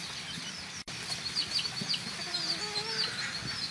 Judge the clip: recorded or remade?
recorded